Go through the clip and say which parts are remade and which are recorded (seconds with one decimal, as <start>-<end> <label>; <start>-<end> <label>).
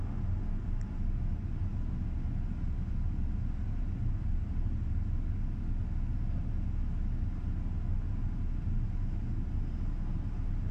0.0-10.7 recorded